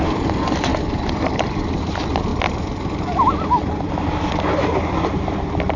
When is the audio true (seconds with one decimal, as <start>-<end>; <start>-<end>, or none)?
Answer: 0.0-5.8